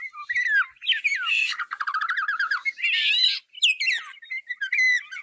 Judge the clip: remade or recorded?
recorded